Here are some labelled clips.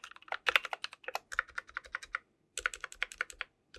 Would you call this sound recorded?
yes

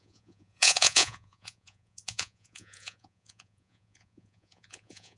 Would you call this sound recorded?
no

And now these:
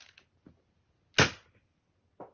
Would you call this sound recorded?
yes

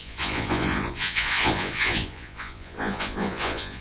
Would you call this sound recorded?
no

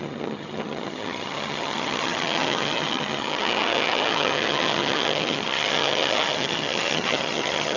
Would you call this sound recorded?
no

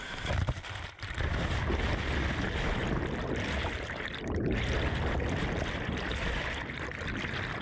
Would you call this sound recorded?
yes